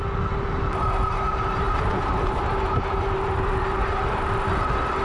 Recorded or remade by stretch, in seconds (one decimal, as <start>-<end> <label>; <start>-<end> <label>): 0.0-1.3 recorded; 1.3-4.3 remade; 4.3-5.0 recorded